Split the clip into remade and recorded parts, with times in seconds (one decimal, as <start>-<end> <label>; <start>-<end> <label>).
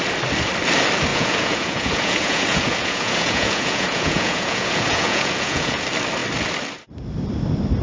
0.0-1.1 recorded; 1.1-5.8 remade; 5.8-7.8 recorded